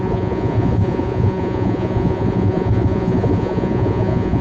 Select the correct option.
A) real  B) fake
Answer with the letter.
B